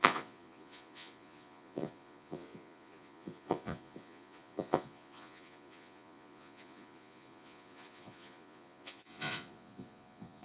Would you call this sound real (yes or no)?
no